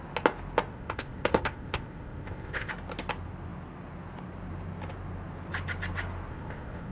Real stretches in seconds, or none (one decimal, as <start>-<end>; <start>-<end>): 0.0-0.7; 2.7-6.3